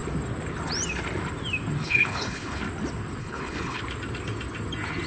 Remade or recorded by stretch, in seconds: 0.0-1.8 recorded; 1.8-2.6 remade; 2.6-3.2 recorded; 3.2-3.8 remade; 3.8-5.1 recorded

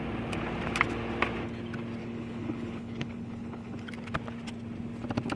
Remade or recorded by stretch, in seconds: 0.0-2.0 recorded; 2.0-3.9 remade; 3.9-5.4 recorded

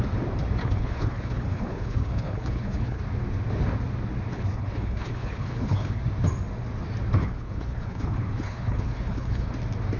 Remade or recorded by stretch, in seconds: 0.0-0.6 recorded; 0.6-3.0 remade; 3.0-4.3 recorded; 4.3-6.0 remade; 6.0-7.2 recorded; 7.2-9.5 remade; 9.5-10.0 recorded

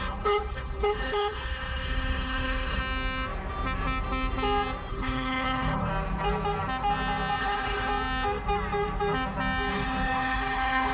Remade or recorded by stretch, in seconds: 0.0-2.8 remade; 2.8-4.9 recorded; 4.9-5.9 remade; 5.9-7.4 recorded; 7.4-7.9 remade; 7.9-9.7 recorded; 9.7-10.9 remade

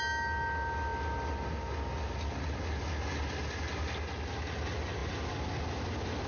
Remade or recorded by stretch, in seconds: 0.0-6.3 recorded